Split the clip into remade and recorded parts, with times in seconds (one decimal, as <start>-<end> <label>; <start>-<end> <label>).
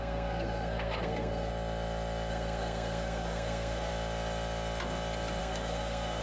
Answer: 0.0-1.5 remade; 1.5-2.3 recorded; 2.3-3.9 remade; 3.9-5.4 recorded; 5.4-6.2 remade